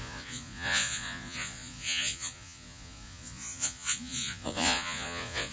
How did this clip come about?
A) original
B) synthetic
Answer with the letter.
B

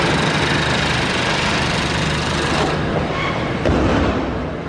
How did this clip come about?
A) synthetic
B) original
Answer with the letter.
B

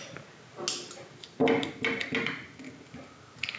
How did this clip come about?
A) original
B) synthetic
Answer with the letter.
A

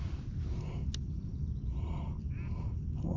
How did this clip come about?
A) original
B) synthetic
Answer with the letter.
A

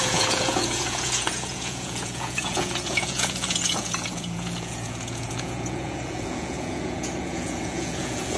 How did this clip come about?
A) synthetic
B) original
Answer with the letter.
A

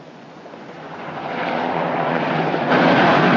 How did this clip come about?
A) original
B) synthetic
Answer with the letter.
B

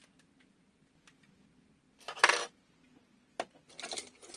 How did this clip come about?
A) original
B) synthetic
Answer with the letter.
A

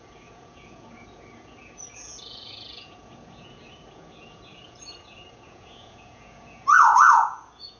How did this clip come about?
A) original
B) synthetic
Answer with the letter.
B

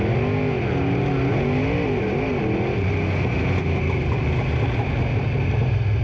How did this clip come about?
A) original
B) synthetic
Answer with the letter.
A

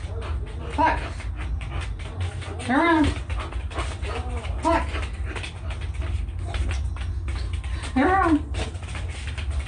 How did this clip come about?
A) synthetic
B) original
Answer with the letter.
B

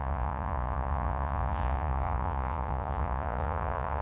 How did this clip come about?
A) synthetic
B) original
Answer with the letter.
A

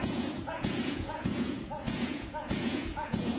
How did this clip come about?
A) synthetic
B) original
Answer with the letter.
A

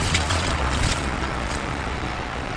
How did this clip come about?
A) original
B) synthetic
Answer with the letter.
B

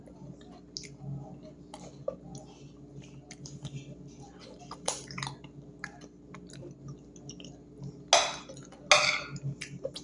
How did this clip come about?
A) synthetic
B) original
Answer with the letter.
B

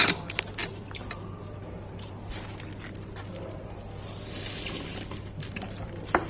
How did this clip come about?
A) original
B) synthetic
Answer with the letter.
A